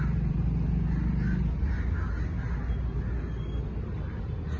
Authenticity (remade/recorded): recorded